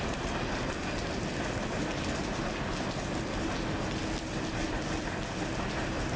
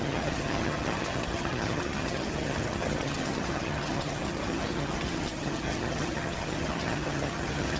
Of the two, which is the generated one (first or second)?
second